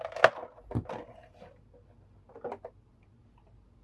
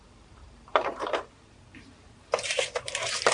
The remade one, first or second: second